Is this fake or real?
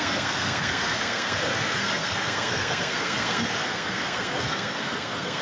fake